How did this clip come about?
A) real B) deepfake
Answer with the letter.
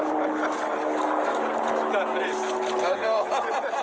A